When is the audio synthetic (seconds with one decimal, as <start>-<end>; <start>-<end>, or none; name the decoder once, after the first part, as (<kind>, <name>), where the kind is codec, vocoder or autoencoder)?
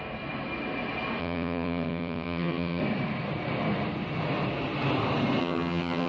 1.2-2.8 (vocoder, HiFi-GAN); 5.4-6.1